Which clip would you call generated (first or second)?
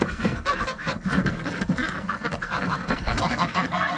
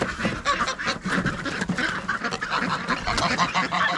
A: first